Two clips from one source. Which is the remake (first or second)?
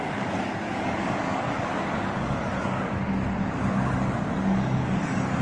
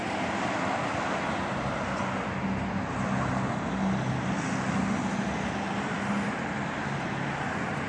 first